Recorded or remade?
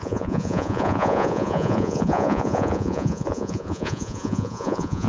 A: remade